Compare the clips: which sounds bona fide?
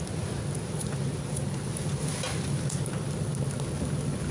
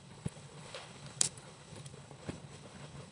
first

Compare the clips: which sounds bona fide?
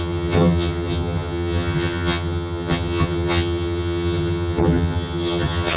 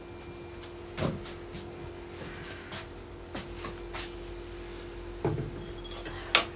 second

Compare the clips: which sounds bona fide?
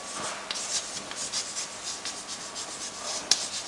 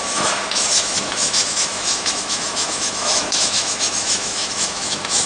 first